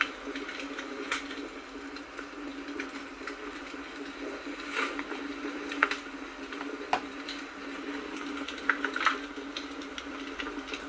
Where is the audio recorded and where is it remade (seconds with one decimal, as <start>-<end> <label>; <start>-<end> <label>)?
0.0-10.9 recorded